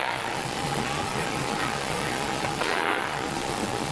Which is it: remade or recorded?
remade